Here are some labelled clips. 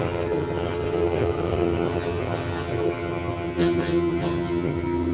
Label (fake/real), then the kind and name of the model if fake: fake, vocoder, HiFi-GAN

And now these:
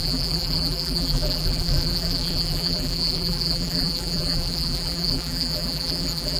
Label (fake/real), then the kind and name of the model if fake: fake, vocoder, BigVGAN v2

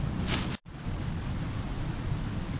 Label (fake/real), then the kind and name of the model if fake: real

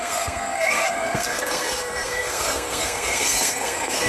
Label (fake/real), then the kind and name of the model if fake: fake, codec, SNAC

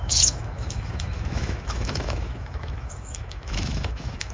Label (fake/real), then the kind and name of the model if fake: fake, autoencoder, DAC-VAE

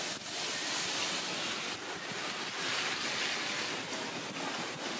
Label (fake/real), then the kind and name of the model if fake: real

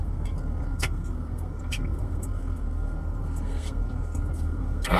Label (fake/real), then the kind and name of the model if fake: fake, codec, SNAC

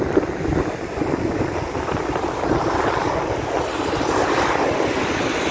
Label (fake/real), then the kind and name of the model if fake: real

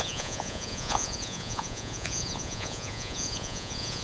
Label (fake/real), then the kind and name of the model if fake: fake, vocoder, Vocos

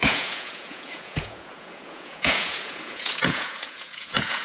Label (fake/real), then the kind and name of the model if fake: fake, vocoder, Vocos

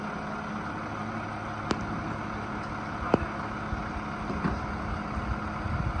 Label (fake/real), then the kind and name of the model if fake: real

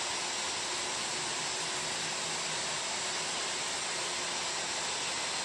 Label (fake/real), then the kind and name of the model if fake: real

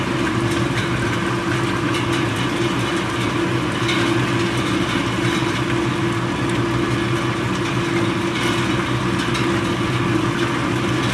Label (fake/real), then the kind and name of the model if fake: real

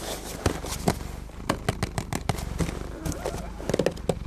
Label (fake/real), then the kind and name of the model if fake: real